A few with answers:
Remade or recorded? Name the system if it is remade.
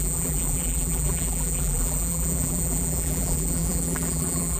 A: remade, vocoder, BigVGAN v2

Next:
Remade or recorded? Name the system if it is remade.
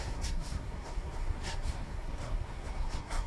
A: remade, codec, SNAC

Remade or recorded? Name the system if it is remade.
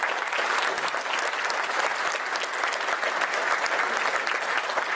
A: recorded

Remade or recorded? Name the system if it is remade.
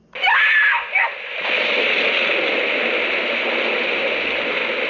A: recorded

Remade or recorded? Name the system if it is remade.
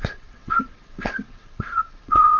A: remade, vocoder, WaveNeXt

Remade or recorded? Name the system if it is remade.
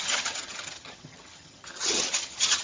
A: remade, vocoder, HiFi-GAN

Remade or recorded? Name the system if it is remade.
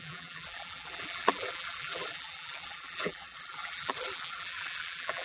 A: remade, vocoder, BigVGAN v2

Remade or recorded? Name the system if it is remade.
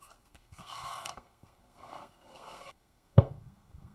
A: remade, codec, SNAC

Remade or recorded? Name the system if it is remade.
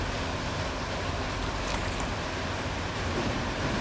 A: remade, vocoder, BigVGAN v2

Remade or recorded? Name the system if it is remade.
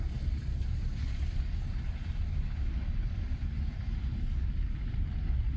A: recorded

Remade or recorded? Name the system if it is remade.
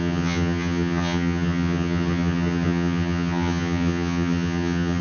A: remade, vocoder, HiFi-GAN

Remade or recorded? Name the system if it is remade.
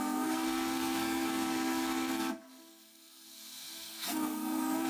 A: remade, codec, SNAC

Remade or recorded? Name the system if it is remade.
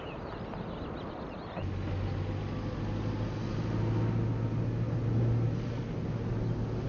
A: recorded